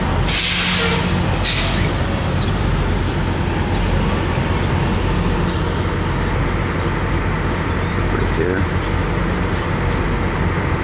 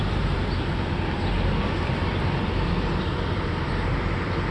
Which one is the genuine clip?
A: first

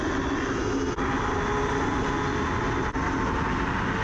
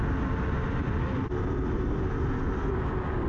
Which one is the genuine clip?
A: first